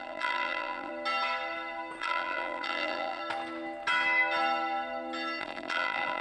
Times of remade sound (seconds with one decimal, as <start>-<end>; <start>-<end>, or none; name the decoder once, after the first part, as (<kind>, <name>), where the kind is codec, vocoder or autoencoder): 0.0-0.9 (vocoder, BigVGAN v2); 2.0-3.2; 5.4-6.2